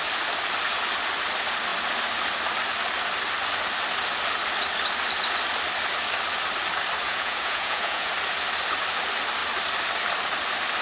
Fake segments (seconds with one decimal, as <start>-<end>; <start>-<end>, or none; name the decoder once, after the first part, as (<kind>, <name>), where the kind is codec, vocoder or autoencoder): 7.1-8.1 (vocoder, Vocos)